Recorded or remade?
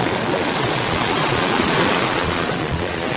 remade